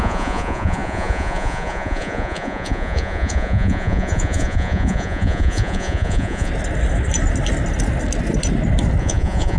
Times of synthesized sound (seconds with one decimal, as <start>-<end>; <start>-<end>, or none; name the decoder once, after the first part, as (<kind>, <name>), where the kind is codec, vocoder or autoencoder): 0.0-6.5 (vocoder, Vocos); 9.0-9.6

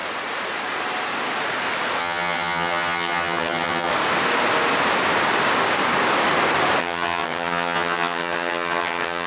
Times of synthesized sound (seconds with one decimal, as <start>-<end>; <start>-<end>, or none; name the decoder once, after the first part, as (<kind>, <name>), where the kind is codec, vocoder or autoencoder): 2.0-3.9 (vocoder, HiFi-GAN); 6.8-9.3

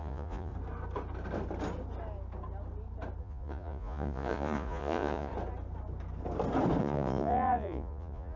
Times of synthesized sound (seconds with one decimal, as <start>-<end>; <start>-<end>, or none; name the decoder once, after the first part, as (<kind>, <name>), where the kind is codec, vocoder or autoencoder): 0.0-0.5 (vocoder, Vocos); 3.2-5.3; 6.8-8.4

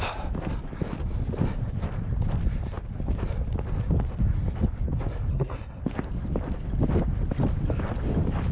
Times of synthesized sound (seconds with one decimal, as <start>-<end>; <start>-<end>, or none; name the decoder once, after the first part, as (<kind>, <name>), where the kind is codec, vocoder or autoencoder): 5.3-5.8 (codec, SNAC)

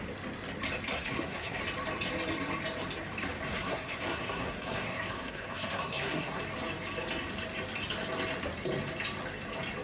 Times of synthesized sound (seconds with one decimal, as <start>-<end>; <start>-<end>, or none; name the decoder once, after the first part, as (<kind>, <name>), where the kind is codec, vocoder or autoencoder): 0.9-1.6 (codec, SNAC); 3.5-6.4

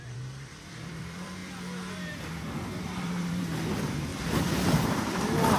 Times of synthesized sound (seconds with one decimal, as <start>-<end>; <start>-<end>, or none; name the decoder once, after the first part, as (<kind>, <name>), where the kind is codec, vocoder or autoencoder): 0.0-1.4 (vocoder, BigVGAN v2); 3.0-5.6

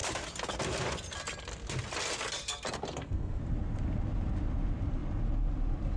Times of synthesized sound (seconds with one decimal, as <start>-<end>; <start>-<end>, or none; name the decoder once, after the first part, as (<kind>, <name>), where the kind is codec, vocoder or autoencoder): 2.9-3.4 (codec, SNAC)